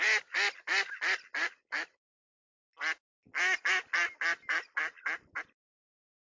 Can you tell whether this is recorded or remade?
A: recorded